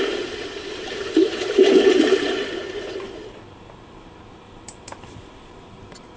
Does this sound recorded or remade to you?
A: remade